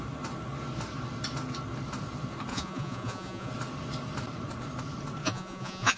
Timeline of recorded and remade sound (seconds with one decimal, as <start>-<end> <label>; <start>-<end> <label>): 0.0-2.5 recorded; 2.5-3.5 remade; 3.5-5.2 recorded; 5.2-6.0 remade

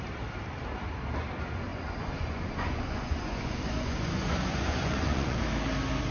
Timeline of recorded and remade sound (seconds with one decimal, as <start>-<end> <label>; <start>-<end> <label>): 0.0-1.7 recorded; 1.7-5.4 remade; 5.4-6.1 recorded

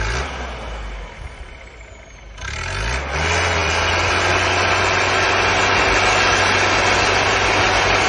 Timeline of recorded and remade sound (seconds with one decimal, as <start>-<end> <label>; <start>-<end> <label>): 0.0-8.1 recorded

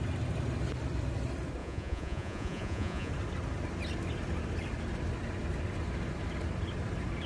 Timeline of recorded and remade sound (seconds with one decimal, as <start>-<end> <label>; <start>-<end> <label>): 0.0-1.6 recorded; 1.6-3.1 remade; 3.1-7.3 recorded

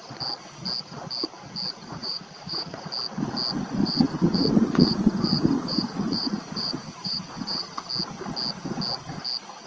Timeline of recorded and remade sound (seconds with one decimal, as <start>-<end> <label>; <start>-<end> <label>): 0.0-1.8 recorded; 1.8-2.9 remade; 2.9-3.8 recorded; 3.8-7.9 remade; 7.9-9.7 recorded

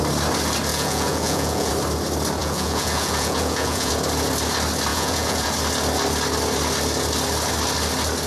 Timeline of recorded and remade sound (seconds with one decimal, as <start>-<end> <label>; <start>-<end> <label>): 0.0-0.7 recorded; 0.7-1.7 remade; 1.7-2.4 recorded; 2.4-3.9 remade; 3.9-4.9 recorded; 4.9-5.5 remade; 5.5-8.3 recorded

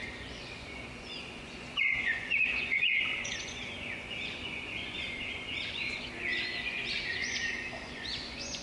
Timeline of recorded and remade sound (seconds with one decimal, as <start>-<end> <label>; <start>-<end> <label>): 0.0-8.6 remade

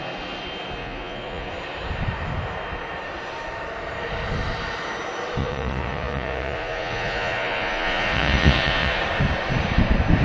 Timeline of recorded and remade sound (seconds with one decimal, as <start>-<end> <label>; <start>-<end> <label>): 0.0-0.8 recorded; 0.8-1.5 remade; 1.5-5.4 recorded; 5.4-9.0 remade; 9.0-10.2 recorded